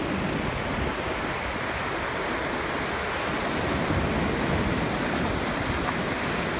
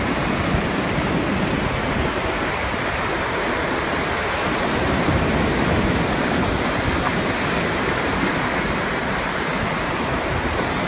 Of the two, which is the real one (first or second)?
first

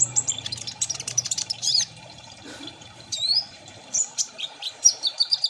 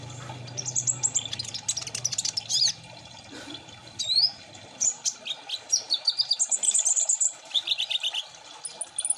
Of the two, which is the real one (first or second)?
second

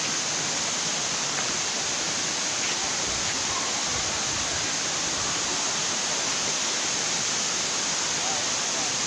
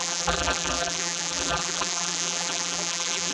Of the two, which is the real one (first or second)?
first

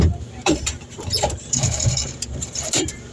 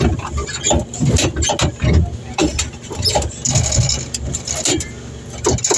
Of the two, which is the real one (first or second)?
second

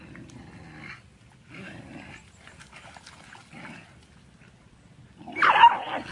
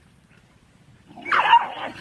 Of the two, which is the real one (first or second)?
first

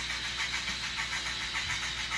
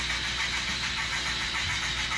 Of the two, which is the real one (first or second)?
first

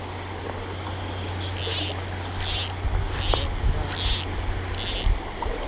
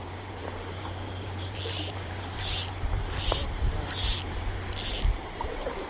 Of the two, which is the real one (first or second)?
first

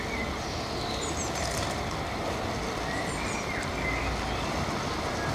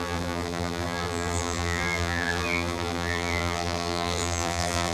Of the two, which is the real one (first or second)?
first